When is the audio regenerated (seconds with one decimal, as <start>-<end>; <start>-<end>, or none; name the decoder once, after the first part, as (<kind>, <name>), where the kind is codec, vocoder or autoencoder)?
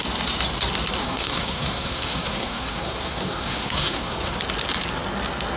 1.0-4.4 (codec, SNAC)